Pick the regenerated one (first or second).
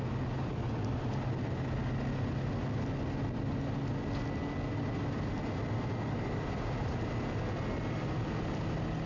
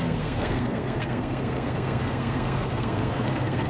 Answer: second